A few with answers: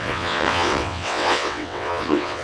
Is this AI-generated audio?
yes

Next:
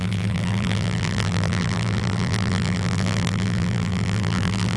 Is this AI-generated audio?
yes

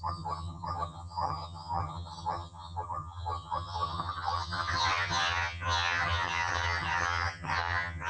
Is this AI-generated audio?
yes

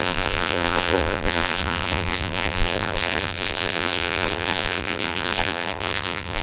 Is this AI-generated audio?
yes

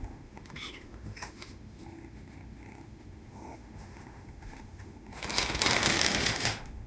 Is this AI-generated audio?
yes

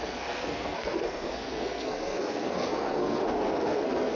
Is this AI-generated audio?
yes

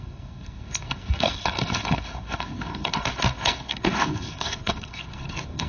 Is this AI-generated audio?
yes